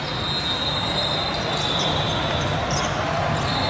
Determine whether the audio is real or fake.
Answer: real